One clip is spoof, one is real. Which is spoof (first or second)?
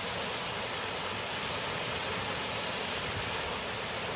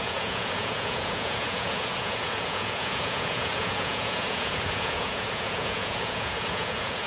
second